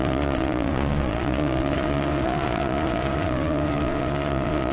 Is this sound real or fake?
fake